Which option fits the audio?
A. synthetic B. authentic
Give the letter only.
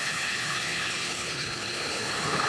A